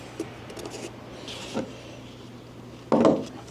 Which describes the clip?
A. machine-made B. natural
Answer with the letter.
B